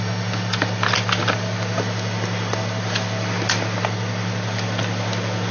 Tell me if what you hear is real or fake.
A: real